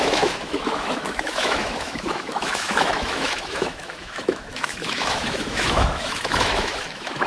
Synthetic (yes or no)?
yes